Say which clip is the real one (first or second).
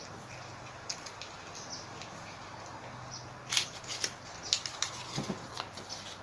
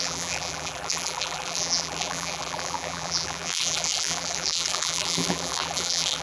first